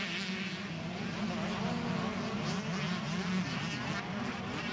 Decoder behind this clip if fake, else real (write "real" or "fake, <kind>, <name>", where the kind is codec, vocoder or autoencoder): real